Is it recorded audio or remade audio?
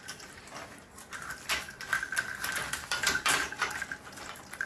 recorded